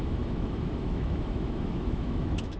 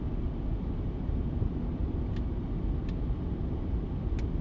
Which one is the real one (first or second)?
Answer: second